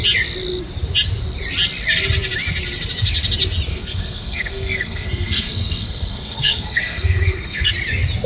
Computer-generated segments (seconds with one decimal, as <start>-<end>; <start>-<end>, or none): 3.7-7.7